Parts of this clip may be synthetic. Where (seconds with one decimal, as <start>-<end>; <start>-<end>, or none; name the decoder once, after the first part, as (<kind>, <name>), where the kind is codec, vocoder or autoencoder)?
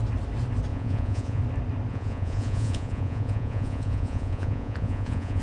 0.7-1.4 (vocoder, Vocos); 1.9-5.4